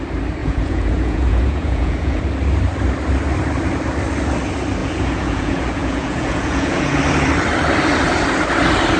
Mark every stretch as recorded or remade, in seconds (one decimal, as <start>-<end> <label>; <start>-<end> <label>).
0.0-0.4 recorded; 0.4-2.2 remade; 2.2-4.8 recorded; 4.8-7.0 remade; 7.0-9.0 recorded